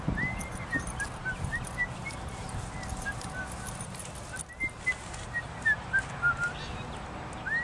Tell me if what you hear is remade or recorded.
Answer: recorded